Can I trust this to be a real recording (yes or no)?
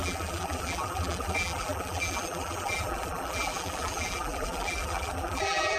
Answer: no